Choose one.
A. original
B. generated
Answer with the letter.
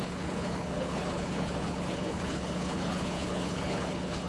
B